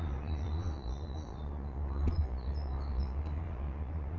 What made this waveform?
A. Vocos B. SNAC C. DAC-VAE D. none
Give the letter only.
A